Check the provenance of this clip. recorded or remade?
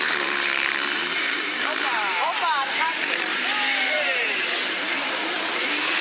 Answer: remade